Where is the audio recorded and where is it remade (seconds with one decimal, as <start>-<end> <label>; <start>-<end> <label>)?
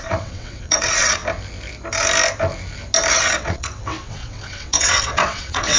0.0-1.2 remade; 1.2-3.1 recorded; 3.1-5.8 remade